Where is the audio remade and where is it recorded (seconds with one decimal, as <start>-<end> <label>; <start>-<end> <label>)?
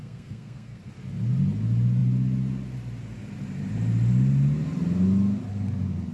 0.0-0.9 remade; 0.9-6.1 recorded